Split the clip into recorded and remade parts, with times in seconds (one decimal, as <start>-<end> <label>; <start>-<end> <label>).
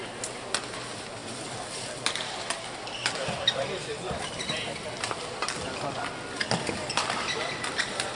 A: 0.0-8.2 recorded